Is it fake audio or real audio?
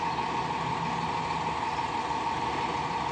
real